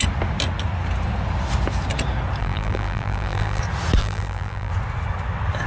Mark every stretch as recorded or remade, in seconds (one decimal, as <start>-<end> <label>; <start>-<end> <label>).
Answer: 0.0-2.4 recorded; 2.4-3.6 remade; 3.6-4.0 recorded; 4.0-4.7 remade; 4.7-5.7 recorded